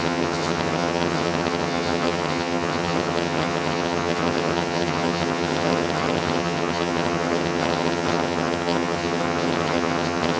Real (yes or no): no